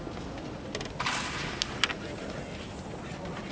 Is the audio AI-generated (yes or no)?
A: no